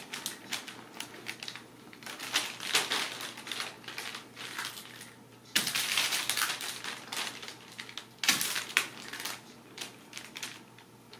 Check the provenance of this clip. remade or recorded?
recorded